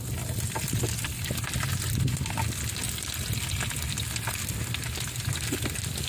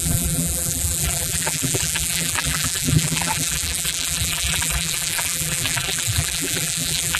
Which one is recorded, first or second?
first